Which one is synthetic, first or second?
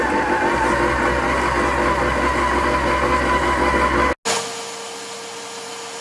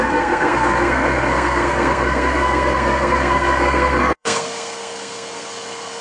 second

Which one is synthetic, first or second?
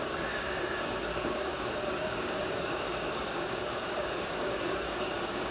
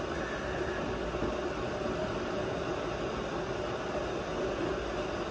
first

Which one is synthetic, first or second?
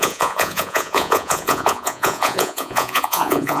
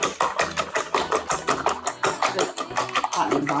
first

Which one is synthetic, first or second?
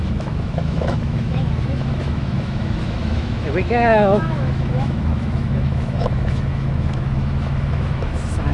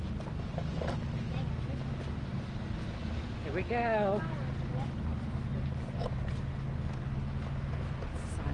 first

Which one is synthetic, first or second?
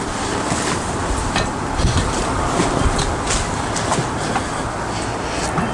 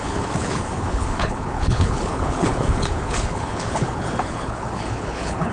second